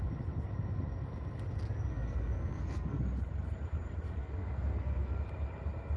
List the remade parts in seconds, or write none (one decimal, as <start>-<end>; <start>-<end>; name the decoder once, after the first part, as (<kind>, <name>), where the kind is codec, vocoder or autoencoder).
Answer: 1.9-3.0 (codec, SNAC); 4.2-5.2